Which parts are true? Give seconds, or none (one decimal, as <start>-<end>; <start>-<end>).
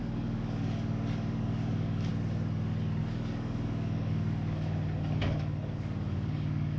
2.1-3.0